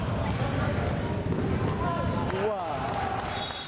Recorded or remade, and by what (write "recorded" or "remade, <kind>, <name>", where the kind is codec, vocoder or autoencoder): recorded